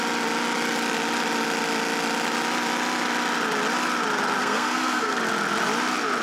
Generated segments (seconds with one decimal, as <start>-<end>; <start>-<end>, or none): 4.4-5.2